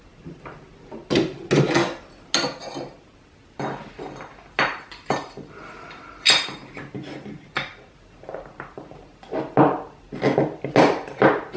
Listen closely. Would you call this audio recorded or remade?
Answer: recorded